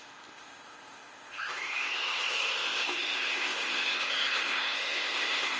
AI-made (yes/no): yes